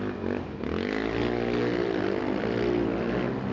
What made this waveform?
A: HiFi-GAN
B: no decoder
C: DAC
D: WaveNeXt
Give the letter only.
B